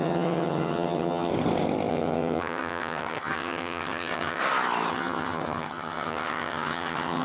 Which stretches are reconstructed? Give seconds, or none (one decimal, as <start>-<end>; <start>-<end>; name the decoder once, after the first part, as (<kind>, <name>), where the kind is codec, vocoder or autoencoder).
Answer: 0.0-1.3 (vocoder, HiFi-GAN); 1.9-4.4; 4.9-7.2